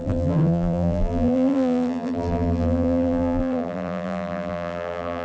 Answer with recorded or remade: remade